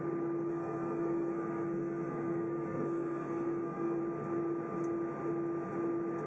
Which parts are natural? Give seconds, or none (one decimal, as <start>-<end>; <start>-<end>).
0.0-0.5; 4.0-6.3